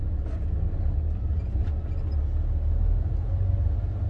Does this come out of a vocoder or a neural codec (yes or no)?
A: no